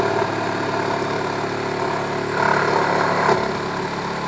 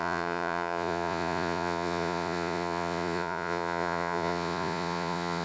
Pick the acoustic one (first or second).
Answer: first